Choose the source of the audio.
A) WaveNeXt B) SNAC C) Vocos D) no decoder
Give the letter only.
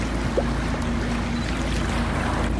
D